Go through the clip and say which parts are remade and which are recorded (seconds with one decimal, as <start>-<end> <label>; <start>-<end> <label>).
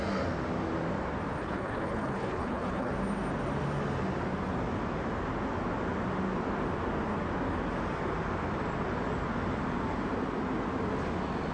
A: 0.0-1.4 recorded; 1.4-2.9 remade; 2.9-11.5 recorded